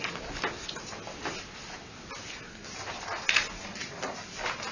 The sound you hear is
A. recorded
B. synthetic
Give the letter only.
A